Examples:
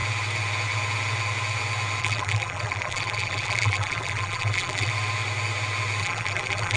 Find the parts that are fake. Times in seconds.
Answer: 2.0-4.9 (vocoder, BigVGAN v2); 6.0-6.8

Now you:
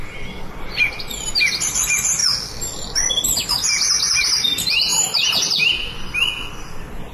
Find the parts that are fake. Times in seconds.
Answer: 4.9-5.7 (vocoder, BigVGAN v2)

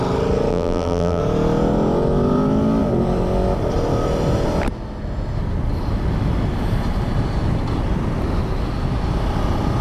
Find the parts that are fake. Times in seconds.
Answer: 0.5-1.2 (vocoder, BigVGAN v2)

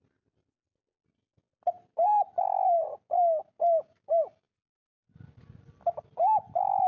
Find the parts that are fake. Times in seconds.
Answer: none

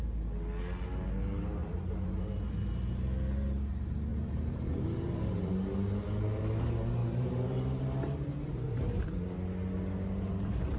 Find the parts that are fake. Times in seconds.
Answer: 1.6-2.6 (vocoder, BigVGAN v2); 4.1-5.5; 7.0-9.2

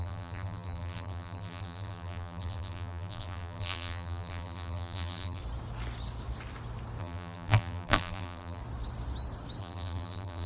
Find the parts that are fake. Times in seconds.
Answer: 0.0-5.4 (vocoder, BigVGAN v2); 7.0-8.6; 9.6-10.5

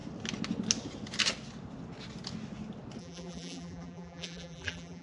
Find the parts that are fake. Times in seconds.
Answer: 3.0-5.0 (vocoder, BigVGAN v2)